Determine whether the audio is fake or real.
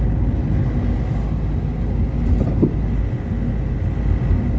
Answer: real